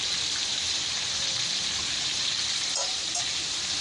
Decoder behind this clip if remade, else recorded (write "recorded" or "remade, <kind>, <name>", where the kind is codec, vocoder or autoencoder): remade, vocoder, BigVGAN v2